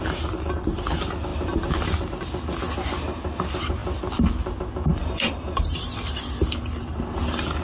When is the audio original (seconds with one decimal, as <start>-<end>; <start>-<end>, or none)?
0.0-5.0; 5.8-7.6